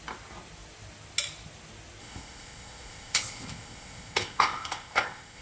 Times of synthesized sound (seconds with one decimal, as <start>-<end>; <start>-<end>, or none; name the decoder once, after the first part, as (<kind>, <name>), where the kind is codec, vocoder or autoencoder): 2.0-5.4 (codec, ZipCodec)